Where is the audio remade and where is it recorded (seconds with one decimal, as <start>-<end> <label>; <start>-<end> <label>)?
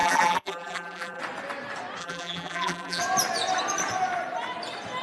0.0-1.2 remade; 1.2-2.0 recorded; 2.0-3.0 remade; 3.0-5.0 recorded